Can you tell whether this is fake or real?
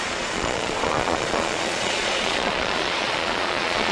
fake